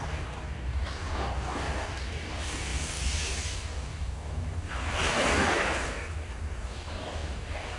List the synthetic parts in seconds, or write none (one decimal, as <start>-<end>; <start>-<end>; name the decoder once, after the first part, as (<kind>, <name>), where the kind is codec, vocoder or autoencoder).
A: 0.0-7.8 (codec, DAC)